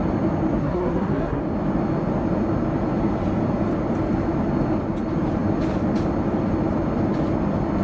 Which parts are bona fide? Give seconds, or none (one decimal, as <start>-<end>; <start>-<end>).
0.0-0.6; 1.4-7.8